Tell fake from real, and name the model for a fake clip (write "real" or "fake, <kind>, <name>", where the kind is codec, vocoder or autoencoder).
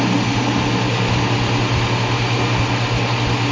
real